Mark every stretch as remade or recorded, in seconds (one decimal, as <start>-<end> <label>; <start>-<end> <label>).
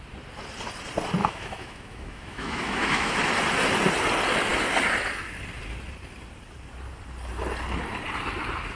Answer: 0.0-1.2 recorded; 1.2-3.2 remade; 3.2-8.8 recorded